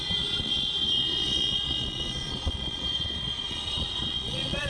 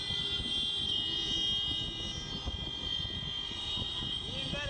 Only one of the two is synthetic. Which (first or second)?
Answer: first